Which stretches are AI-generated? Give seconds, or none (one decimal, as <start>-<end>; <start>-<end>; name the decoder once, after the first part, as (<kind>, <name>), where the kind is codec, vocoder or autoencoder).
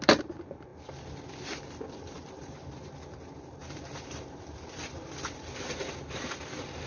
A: 0.0-0.7 (vocoder, BigVGAN v2); 1.4-3.6; 5.5-6.9